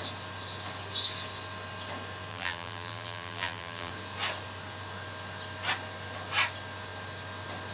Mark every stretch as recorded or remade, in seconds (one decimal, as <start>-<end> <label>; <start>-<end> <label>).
0.0-2.3 recorded; 2.3-3.9 remade; 3.9-7.7 recorded